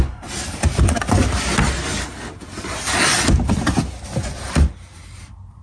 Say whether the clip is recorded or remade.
recorded